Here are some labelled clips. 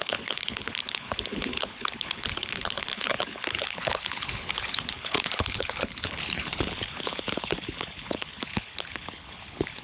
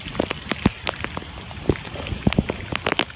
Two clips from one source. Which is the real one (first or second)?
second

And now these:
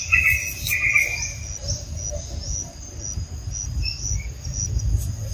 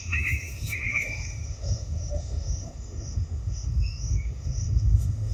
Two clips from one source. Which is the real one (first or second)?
first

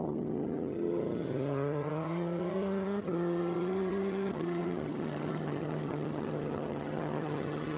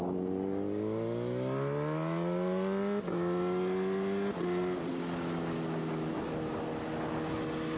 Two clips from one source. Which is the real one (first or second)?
second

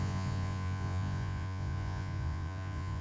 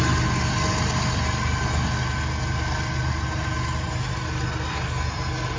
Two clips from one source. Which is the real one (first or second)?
second